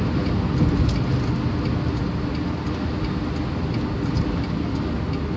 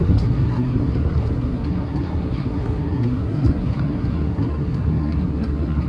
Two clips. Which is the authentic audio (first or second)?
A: first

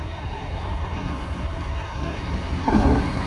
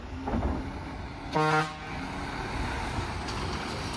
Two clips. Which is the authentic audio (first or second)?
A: second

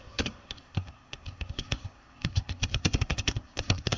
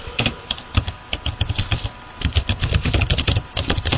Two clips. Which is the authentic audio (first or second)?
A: second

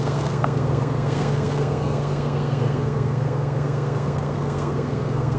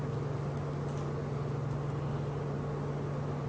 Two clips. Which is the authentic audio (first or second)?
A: second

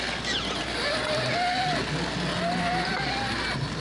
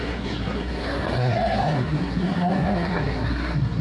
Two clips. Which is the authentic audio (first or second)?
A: first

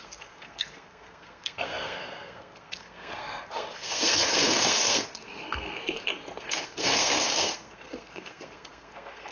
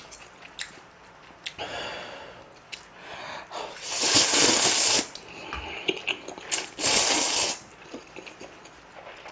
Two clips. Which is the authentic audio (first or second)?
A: second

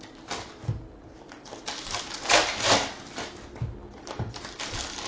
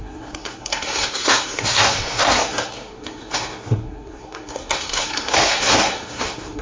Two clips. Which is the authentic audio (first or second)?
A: first